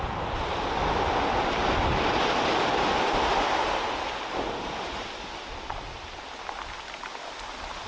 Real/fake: real